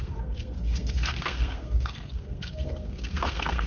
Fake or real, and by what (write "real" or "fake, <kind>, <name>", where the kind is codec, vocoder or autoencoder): fake, codec, SNAC